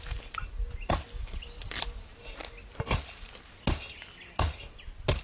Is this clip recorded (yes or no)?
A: yes